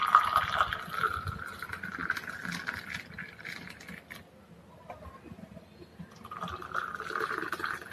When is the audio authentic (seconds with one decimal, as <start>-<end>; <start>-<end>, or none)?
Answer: 0.0-7.9